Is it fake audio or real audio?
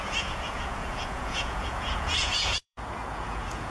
fake